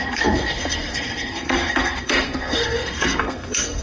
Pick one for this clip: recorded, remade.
remade